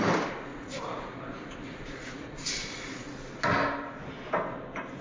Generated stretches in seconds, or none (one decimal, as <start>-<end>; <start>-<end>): 0.5-3.1